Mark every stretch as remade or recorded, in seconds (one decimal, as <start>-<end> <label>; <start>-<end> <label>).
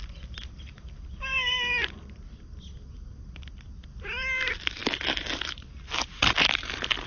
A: 0.0-4.8 recorded; 4.8-5.7 remade; 5.7-7.1 recorded